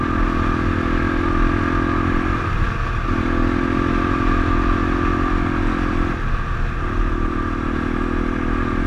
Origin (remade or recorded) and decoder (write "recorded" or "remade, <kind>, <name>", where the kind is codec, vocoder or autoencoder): recorded